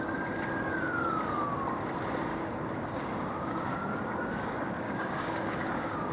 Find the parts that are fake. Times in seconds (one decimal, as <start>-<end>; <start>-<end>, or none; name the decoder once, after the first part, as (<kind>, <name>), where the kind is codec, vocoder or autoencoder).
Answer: 2.3-6.1 (codec, DAC)